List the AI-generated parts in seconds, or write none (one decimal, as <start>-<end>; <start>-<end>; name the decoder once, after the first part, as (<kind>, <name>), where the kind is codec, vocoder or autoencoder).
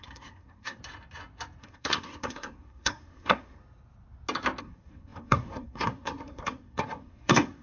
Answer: 0.0-0.8 (codec, SNAC); 1.6-3.6; 4.6-7.6